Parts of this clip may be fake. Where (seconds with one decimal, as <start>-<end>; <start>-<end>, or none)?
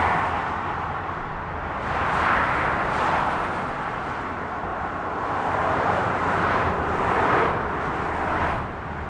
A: 4.7-6.1